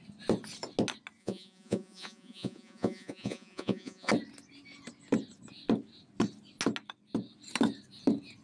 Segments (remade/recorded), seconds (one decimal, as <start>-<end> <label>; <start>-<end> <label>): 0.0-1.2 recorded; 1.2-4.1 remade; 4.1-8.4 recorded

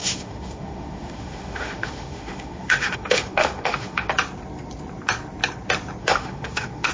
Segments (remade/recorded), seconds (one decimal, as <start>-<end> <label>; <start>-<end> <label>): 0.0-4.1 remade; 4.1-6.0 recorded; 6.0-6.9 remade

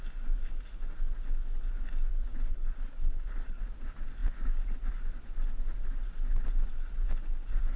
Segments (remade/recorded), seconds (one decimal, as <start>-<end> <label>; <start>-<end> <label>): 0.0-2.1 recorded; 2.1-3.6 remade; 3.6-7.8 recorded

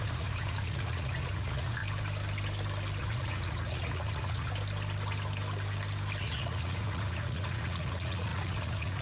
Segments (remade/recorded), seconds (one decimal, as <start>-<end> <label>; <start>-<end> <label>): 0.0-1.8 remade; 1.8-3.0 recorded; 3.0-4.5 remade; 4.5-6.2 recorded; 6.2-9.0 remade

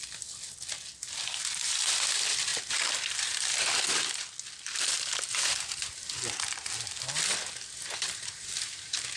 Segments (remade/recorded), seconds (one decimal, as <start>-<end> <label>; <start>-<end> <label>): 0.0-9.2 recorded